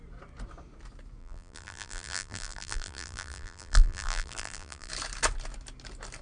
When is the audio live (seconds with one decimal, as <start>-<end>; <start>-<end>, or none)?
0.0-1.2; 4.9-6.2